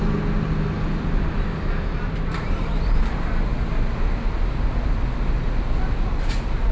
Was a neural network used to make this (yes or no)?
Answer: no